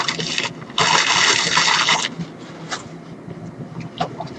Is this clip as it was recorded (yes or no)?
yes